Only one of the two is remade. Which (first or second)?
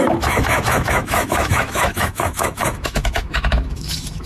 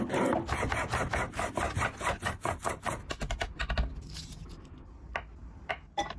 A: first